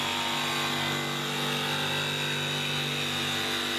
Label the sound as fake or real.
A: real